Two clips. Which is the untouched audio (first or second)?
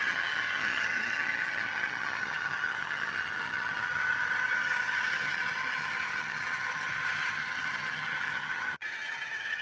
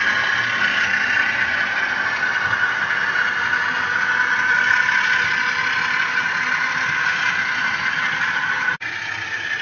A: second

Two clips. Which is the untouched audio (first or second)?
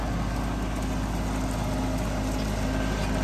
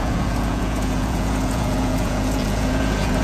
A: first